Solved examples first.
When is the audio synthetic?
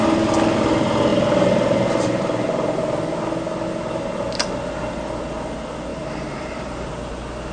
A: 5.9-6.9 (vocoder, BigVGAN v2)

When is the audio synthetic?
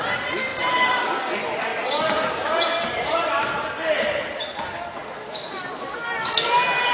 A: 0.5-1.1 (vocoder, BigVGAN v2); 1.7-4.5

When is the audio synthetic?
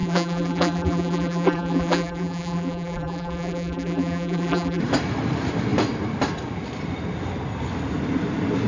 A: 0.0-4.8 (vocoder, BigVGAN v2)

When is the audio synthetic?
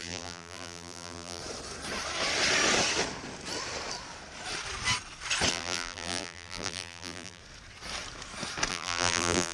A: 0.0-1.4 (vocoder, BigVGAN v2); 5.5-7.4; 8.7-9.5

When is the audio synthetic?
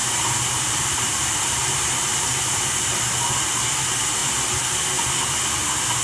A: 0.0-2.9 (vocoder, BigVGAN v2); 4.2-4.9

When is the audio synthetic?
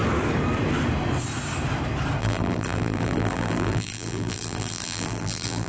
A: 2.2-5.7 (vocoder, BigVGAN v2)